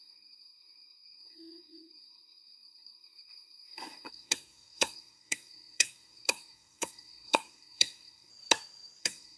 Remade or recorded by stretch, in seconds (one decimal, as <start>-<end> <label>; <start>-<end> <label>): 0.0-8.3 remade; 8.3-9.0 recorded; 9.0-9.4 remade